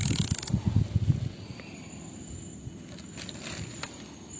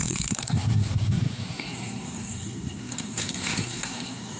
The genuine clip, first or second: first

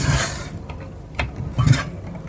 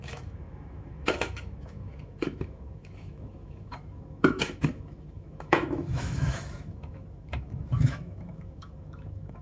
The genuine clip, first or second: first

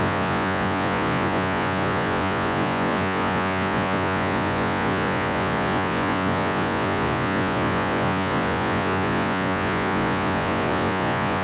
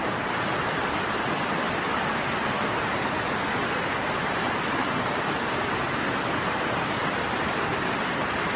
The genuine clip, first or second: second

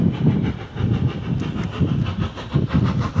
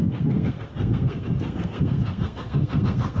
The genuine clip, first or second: first